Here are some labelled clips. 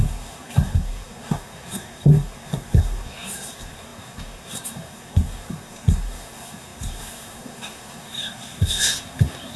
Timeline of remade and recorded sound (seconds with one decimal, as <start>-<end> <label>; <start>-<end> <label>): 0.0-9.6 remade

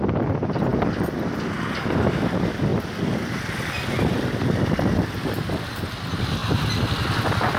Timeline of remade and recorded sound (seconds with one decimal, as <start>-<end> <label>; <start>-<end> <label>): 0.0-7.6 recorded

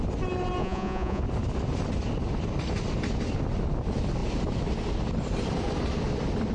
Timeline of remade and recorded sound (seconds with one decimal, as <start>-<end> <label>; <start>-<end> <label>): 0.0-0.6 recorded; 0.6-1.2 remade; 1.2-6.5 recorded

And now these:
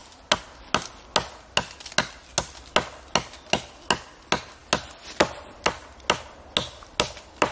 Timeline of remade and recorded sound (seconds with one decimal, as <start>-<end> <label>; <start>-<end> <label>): 0.0-7.5 recorded

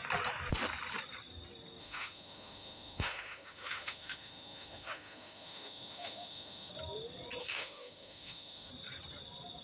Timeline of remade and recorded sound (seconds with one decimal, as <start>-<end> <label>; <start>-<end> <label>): 0.0-1.8 recorded; 1.8-6.7 remade; 6.7-7.4 recorded; 7.4-8.7 remade; 8.7-9.6 recorded